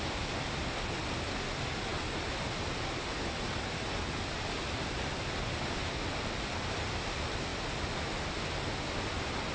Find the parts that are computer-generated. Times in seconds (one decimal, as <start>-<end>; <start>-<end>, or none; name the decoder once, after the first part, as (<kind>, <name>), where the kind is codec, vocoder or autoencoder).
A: none